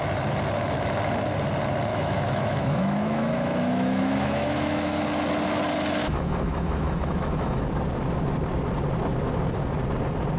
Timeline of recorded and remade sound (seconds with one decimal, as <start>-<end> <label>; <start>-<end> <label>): 0.0-1.9 recorded; 1.9-5.0 remade; 5.0-6.0 recorded; 6.0-7.6 remade; 7.6-10.4 recorded